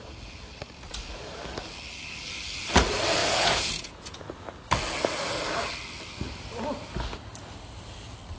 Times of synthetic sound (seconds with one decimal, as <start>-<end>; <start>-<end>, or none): 3.2-4.2